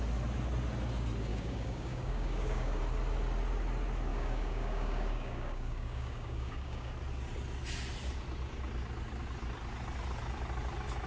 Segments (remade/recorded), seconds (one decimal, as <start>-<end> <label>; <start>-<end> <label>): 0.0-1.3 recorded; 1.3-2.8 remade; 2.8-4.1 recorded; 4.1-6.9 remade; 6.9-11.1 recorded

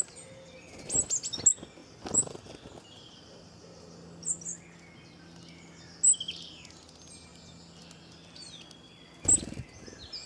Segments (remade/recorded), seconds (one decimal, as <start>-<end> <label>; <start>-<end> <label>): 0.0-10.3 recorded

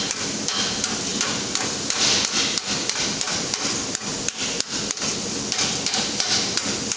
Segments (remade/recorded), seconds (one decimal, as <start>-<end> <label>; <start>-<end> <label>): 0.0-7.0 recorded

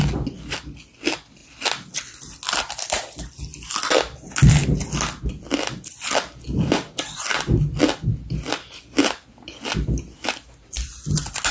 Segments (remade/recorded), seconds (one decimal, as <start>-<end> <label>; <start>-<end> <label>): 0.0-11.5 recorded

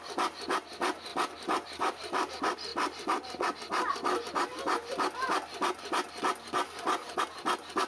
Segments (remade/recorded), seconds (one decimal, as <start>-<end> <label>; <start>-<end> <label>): 0.0-1.1 recorded; 1.1-2.3 remade; 2.3-7.9 recorded